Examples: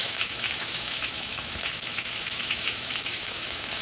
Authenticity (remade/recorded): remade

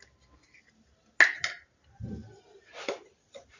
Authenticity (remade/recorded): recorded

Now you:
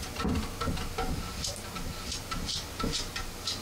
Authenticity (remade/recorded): recorded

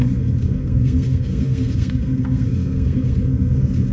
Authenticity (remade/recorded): remade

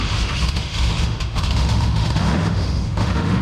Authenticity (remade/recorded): remade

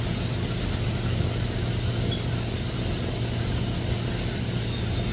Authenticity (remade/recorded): recorded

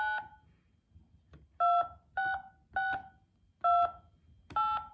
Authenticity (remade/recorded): recorded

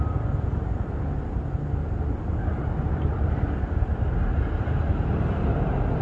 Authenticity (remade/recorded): recorded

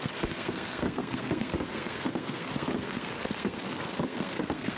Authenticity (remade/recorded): remade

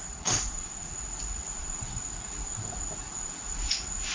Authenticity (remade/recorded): remade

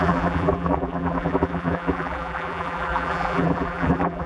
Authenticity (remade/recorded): remade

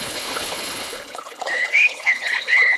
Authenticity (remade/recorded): remade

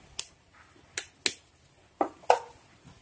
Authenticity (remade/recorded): recorded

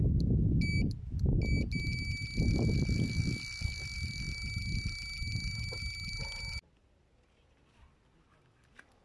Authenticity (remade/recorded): recorded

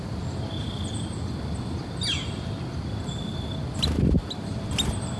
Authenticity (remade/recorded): recorded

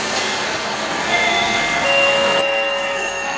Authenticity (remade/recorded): remade